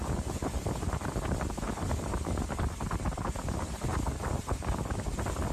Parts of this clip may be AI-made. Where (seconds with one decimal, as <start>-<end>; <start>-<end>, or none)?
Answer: none